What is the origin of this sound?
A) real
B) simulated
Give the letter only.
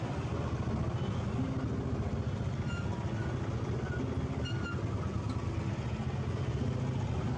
A